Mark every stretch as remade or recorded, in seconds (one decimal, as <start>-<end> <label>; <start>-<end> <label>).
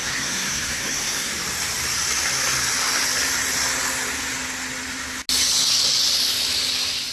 0.0-1.3 remade; 1.3-7.1 recorded